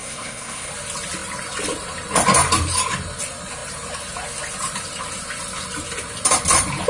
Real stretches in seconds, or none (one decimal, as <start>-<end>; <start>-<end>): 0.7-6.9